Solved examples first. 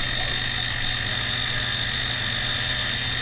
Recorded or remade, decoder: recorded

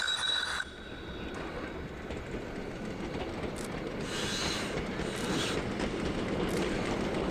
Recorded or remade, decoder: recorded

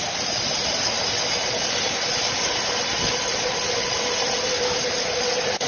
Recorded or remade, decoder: recorded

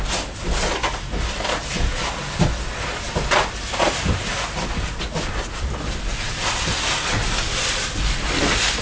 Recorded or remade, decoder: recorded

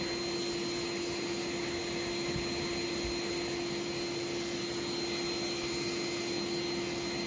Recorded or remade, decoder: recorded